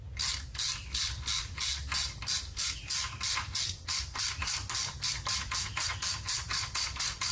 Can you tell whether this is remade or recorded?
recorded